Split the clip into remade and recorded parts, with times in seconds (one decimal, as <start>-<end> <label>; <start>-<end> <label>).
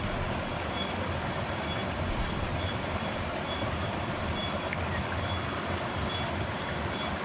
0.0-7.2 recorded